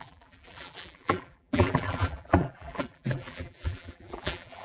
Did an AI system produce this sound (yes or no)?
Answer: yes